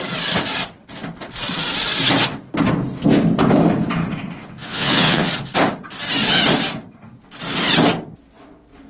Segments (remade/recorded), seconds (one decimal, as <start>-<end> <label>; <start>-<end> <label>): 0.0-4.4 recorded; 4.4-5.3 remade; 5.3-8.9 recorded